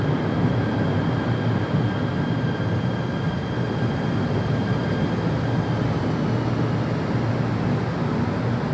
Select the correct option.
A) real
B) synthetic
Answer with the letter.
A